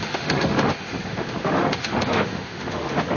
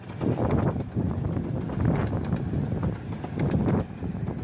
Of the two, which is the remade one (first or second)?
first